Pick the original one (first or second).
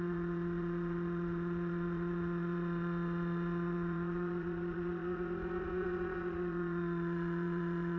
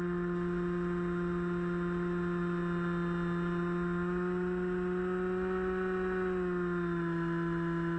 second